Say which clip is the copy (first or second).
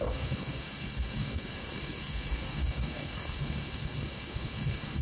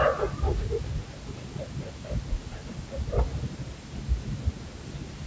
first